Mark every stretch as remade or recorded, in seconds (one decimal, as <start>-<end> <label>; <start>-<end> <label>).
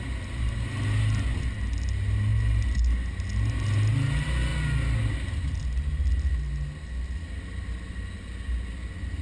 0.0-9.2 recorded